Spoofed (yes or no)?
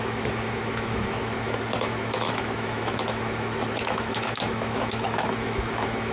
yes